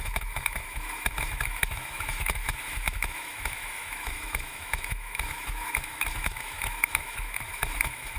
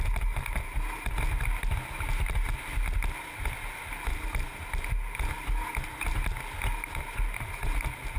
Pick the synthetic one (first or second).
first